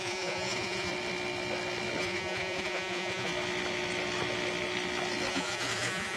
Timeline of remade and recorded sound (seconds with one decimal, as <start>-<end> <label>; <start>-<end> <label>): 0.0-0.9 remade; 0.9-2.0 recorded; 2.0-3.3 remade; 3.3-5.3 recorded; 5.3-6.2 remade